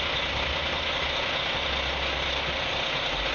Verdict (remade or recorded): recorded